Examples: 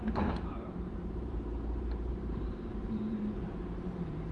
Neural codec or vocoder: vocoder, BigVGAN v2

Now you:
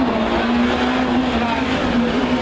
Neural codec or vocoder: none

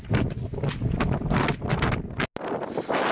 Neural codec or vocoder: none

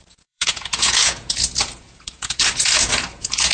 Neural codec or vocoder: vocoder, Vocos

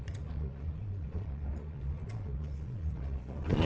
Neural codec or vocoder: vocoder, Vocos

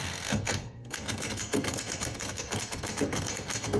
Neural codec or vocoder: codec, SNAC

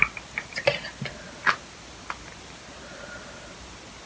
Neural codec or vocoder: none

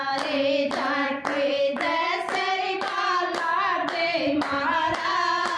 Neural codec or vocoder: vocoder, BigVGAN v2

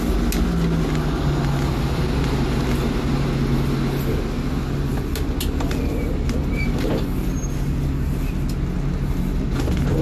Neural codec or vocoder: none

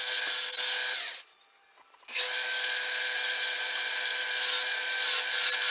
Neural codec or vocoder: none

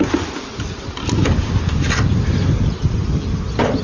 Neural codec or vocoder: none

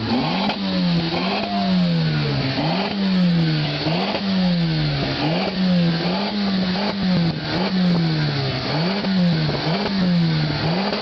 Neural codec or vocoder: none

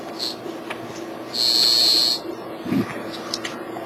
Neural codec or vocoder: none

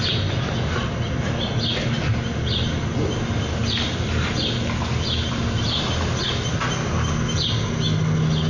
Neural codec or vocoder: none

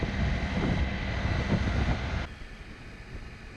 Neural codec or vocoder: none